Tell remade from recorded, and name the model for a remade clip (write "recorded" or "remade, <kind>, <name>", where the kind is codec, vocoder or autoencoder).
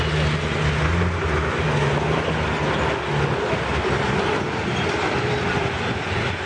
recorded